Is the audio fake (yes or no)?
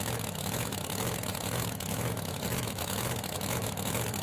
yes